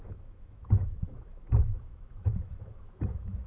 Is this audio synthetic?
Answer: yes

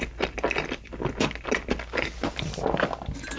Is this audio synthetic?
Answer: no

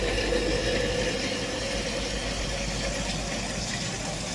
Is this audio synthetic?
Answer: no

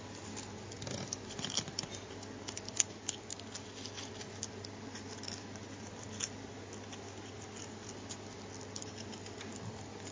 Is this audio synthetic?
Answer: no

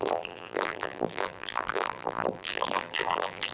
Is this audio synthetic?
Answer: yes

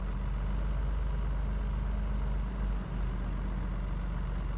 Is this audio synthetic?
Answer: no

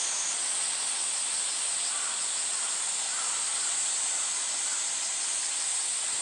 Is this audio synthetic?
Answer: no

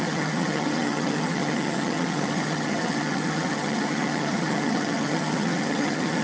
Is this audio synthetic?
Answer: yes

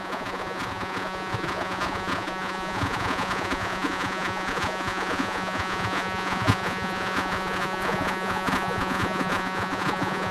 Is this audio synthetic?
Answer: yes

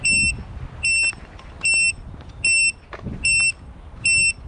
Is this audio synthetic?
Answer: no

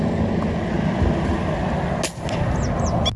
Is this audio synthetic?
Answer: no